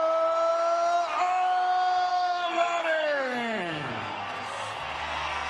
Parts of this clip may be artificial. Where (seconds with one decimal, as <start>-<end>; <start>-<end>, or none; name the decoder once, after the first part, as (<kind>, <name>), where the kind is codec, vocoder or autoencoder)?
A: 2.1-5.5 (codec, SNAC)